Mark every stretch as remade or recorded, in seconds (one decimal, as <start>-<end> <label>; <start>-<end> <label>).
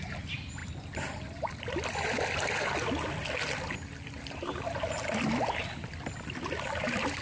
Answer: 0.0-7.2 recorded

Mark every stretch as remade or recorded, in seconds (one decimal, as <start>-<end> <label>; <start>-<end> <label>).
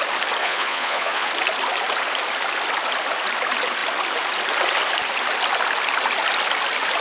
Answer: 0.0-0.4 recorded; 0.4-1.3 remade; 1.3-7.0 recorded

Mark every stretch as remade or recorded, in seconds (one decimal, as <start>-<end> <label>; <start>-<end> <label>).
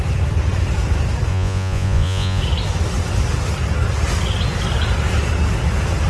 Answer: 0.0-1.3 recorded; 1.3-2.4 remade; 2.4-6.1 recorded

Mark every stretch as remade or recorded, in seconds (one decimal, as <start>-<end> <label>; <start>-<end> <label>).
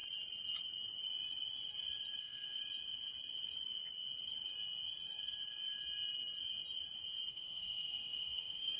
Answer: 0.0-2.2 recorded; 2.2-2.6 remade; 2.6-7.3 recorded; 7.3-8.8 remade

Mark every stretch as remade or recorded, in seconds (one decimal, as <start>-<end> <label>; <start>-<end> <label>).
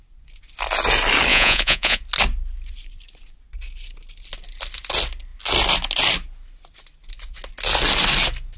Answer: 0.0-1.3 recorded; 1.3-2.0 remade; 2.0-8.6 recorded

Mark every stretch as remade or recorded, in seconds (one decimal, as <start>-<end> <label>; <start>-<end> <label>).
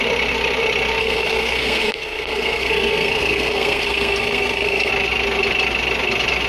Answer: 0.0-1.0 recorded; 1.0-4.9 remade; 4.9-6.5 recorded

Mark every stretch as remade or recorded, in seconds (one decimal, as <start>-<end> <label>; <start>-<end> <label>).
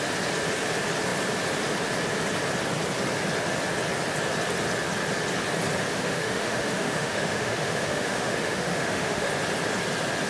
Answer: 0.0-5.9 recorded; 5.9-9.3 remade; 9.3-10.3 recorded